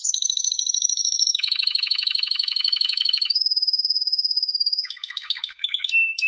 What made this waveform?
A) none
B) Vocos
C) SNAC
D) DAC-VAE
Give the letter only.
D